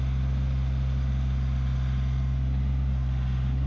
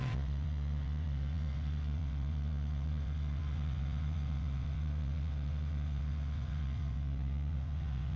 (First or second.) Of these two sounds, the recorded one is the first